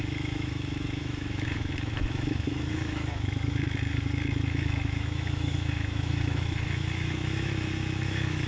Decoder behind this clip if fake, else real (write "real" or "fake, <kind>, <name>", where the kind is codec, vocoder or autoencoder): fake, autoencoder, DAC-VAE